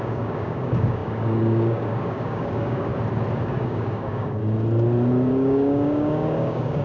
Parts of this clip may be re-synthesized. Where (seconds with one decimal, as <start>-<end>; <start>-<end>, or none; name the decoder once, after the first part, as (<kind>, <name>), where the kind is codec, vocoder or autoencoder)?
0.0-2.9 (codec, DAC); 3.4-4.4; 5.3-6.8